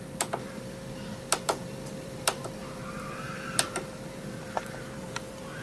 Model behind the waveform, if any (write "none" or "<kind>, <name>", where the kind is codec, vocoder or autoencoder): vocoder, BigVGAN v2